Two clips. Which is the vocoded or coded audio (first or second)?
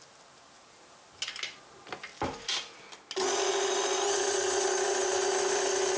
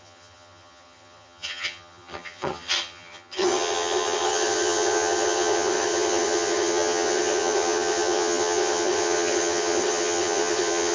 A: second